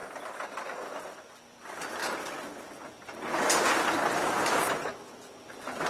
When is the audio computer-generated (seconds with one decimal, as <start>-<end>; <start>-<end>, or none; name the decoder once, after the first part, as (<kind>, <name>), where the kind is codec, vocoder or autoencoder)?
none